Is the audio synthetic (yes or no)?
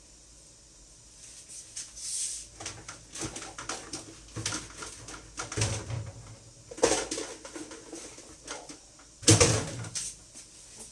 no